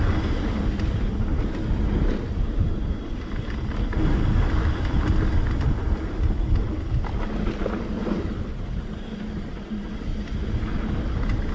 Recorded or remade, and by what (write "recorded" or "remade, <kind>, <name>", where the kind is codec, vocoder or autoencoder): recorded